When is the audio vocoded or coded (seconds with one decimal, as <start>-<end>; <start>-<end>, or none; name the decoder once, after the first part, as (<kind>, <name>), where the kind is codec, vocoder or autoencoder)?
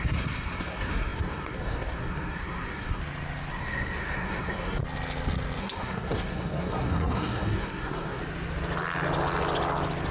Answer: 0.0-3.0 (codec, SNAC); 3.5-4.8; 5.6-8.2